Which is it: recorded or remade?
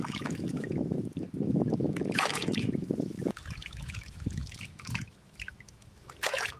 remade